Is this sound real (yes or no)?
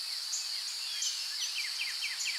yes